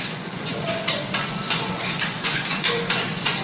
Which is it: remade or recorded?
remade